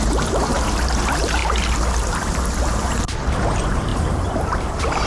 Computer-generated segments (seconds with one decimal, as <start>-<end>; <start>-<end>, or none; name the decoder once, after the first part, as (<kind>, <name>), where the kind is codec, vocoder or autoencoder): 0.0-1.4 (vocoder, BigVGAN v2); 2.7-5.1